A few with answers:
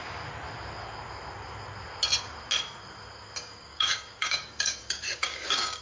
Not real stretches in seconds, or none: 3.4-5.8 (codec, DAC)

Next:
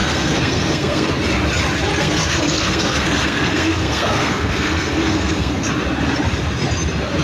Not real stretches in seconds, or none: 0.0-1.1 (codec, SNAC); 2.0-5.7

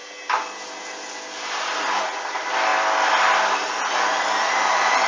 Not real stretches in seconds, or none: 1.5-5.1 (vocoder, BigVGAN v2)

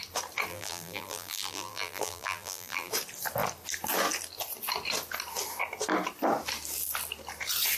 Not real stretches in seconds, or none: 0.5-2.9 (vocoder, BigVGAN v2)